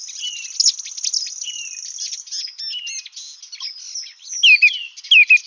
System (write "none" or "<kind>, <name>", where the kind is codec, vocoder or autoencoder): none